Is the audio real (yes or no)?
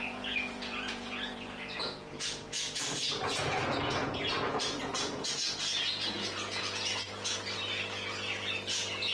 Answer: no